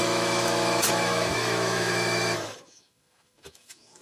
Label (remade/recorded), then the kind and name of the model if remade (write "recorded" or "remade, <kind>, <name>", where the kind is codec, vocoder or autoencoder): remade, autoencoder, DAC-VAE